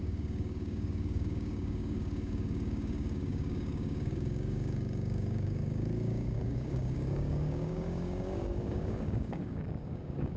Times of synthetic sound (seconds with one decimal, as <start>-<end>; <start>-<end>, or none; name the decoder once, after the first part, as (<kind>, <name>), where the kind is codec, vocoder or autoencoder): 0.0-10.4 (codec, DAC)